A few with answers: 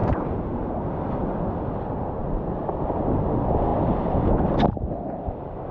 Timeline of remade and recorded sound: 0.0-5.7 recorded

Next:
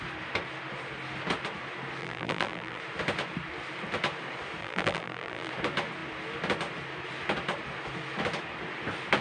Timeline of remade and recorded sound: 0.0-2.0 recorded; 2.0-2.8 remade; 2.8-4.6 recorded; 4.6-5.5 remade; 5.5-9.2 recorded

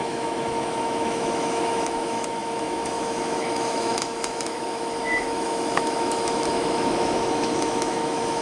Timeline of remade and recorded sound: 0.0-8.4 remade

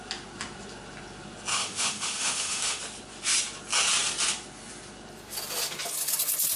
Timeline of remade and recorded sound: 0.0-1.5 recorded; 1.5-2.8 remade; 2.8-6.6 recorded

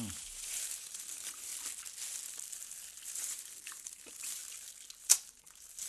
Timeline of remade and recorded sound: 0.0-1.5 remade; 1.5-3.1 recorded; 3.1-4.4 remade; 4.4-5.0 recorded; 5.0-5.9 remade

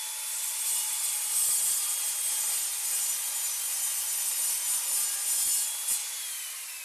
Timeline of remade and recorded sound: 0.0-6.8 recorded

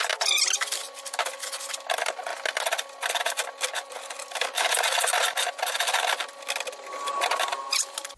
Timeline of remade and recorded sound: 0.0-8.2 recorded